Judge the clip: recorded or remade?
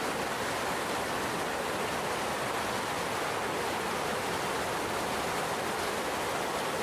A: recorded